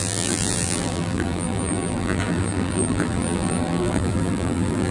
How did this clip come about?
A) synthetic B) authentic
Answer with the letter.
A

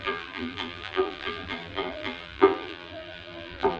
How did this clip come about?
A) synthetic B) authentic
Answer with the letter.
A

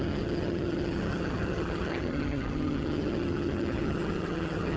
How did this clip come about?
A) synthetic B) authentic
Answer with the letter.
A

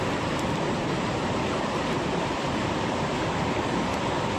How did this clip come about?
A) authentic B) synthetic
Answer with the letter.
A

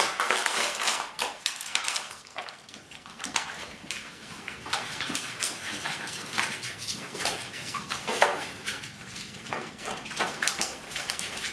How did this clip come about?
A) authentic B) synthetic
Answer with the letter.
B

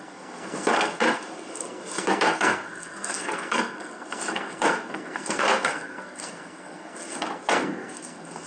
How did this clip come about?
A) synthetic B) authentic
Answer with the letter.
A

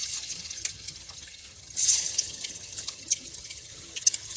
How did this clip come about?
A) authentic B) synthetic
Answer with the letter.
B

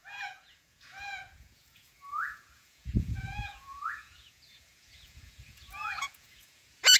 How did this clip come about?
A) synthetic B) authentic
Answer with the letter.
A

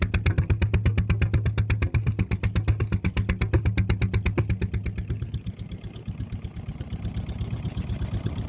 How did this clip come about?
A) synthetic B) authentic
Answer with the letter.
B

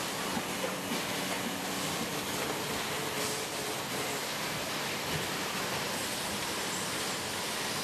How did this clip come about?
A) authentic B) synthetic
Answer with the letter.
A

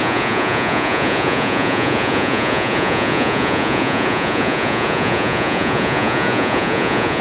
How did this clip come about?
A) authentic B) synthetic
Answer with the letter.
B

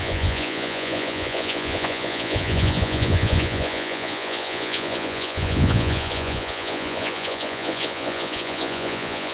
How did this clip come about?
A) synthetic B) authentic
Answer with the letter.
A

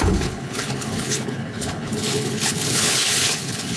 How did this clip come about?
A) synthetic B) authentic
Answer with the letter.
A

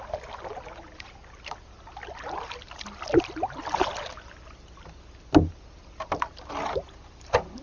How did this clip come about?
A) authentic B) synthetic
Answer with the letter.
A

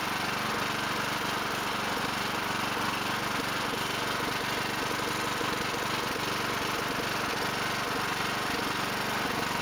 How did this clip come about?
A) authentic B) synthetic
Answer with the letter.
A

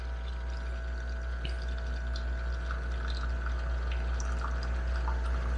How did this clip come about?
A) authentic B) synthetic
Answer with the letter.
A